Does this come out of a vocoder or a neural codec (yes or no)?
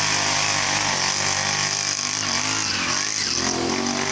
no